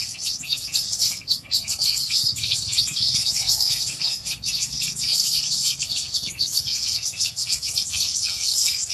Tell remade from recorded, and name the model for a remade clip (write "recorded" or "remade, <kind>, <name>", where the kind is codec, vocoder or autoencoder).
remade, codec, SNAC